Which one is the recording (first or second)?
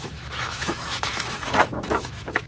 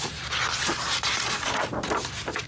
second